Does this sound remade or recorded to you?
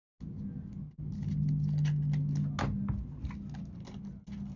recorded